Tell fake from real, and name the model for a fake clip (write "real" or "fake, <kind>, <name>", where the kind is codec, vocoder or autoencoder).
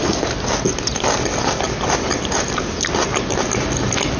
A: real